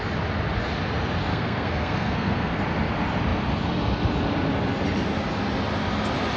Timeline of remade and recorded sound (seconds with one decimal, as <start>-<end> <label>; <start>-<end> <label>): 0.0-1.3 recorded; 1.3-2.6 remade; 2.6-6.4 recorded